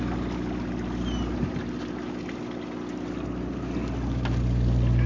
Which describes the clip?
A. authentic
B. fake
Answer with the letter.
A